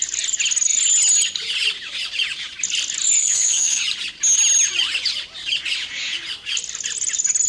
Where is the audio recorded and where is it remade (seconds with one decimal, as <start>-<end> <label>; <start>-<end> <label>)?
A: 0.0-3.2 recorded; 3.2-3.8 remade; 3.8-7.5 recorded